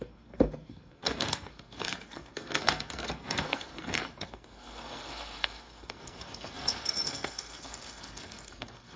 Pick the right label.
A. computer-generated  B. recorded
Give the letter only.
A